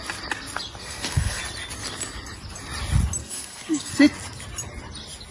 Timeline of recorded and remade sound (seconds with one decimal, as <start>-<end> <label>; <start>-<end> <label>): 0.0-0.8 recorded; 0.8-1.4 remade; 1.4-3.2 recorded; 3.2-3.9 remade; 3.9-5.3 recorded